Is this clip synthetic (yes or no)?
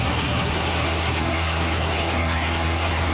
yes